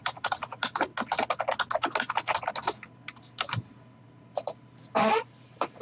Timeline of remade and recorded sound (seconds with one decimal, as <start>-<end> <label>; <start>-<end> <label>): 0.0-0.5 remade; 0.5-4.0 recorded; 4.0-5.8 remade